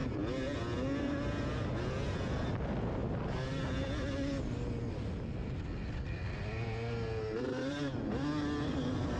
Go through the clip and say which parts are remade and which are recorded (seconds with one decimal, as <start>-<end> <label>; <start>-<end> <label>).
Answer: 0.0-9.2 recorded